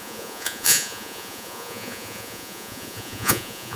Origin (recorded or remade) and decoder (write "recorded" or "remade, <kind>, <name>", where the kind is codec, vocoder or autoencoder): remade, vocoder, Vocos